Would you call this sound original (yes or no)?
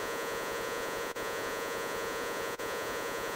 no